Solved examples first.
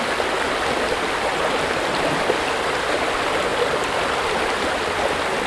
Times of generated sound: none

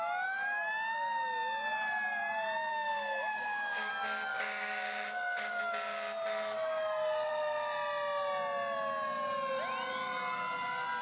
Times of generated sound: 2.7-3.9 (codec, DAC); 4.3-5.6

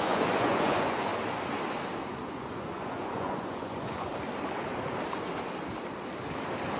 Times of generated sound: 0.0-1.1 (vocoder, Vocos); 2.1-4.1

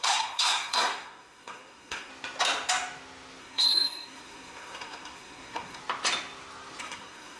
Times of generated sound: 0.0-2.1 (codec, SNAC); 3.4-5.8; 6.8-7.4